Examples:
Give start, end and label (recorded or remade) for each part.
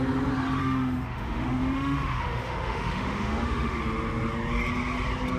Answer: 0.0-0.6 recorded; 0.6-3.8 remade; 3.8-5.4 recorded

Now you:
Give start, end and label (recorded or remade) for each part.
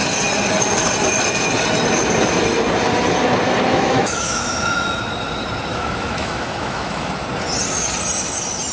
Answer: 0.0-3.7 recorded; 3.7-5.0 remade; 5.0-5.7 recorded; 5.7-7.1 remade; 7.1-8.7 recorded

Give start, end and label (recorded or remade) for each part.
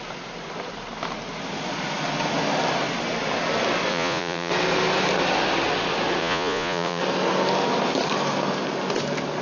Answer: 0.0-3.9 recorded; 3.9-4.5 remade; 4.5-6.2 recorded; 6.2-7.0 remade; 7.0-9.4 recorded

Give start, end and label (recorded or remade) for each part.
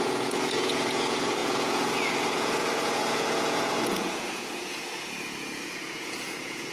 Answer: 0.0-6.7 remade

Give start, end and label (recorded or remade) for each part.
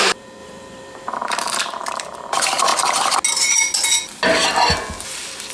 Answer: 0.0-2.7 remade; 2.7-5.0 recorded; 5.0-5.5 remade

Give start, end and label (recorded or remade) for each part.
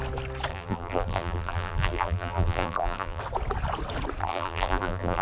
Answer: 0.0-0.5 recorded; 0.5-3.2 remade; 3.2-4.2 recorded; 4.2-5.2 remade